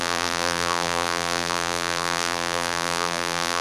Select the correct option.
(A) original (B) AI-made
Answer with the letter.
B